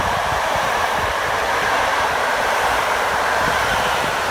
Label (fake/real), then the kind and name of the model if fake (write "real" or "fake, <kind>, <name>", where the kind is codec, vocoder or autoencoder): fake, vocoder, BigVGAN v2